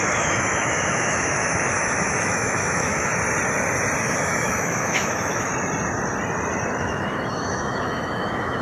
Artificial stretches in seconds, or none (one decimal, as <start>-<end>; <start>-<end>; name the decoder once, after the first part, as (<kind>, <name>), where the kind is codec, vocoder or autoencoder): 0.0-3.1 (autoencoder, DAC-VAE); 4.0-5.5; 6.8-8.6